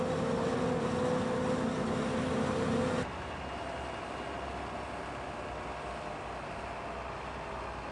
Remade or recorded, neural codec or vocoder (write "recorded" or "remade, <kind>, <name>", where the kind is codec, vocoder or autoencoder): recorded